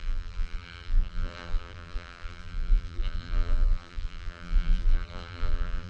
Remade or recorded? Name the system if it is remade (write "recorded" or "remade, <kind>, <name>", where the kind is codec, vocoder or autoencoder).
remade, vocoder, BigVGAN v2